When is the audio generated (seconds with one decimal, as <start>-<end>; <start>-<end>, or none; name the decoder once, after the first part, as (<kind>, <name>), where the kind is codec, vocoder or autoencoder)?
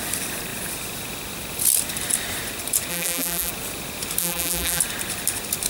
2.9-3.5 (vocoder, BigVGAN v2); 4.2-4.8